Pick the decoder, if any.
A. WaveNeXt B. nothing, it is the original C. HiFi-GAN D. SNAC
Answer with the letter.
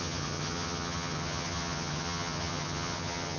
C